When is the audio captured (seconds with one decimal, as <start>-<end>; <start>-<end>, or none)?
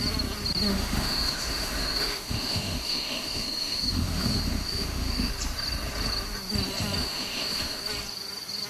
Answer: 0.0-0.7; 5.3-7.0; 7.8-8.7